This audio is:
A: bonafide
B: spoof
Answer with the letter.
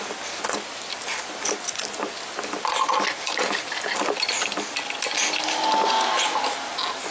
A